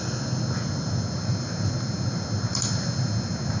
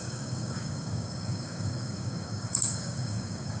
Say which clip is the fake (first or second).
second